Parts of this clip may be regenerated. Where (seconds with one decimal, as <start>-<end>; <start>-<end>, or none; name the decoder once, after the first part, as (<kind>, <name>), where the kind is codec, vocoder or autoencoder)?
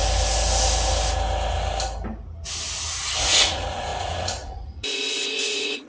3.2-5.9 (vocoder, Vocos)